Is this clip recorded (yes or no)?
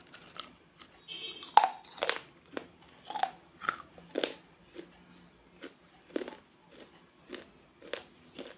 yes